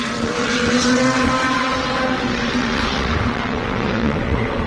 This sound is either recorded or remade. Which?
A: remade